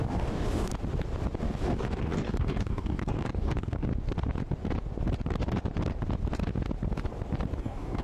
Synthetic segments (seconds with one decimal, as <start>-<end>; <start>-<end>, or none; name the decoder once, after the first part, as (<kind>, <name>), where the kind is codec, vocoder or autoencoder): 0.0-0.7 (codec, DAC); 1.4-3.9; 7.6-8.0